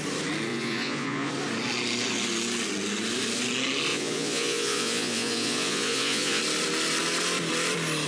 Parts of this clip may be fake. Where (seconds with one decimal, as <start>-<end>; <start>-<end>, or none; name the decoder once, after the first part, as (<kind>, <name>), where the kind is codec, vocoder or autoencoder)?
0.5-1.3 (vocoder, Vocos); 3.9-6.4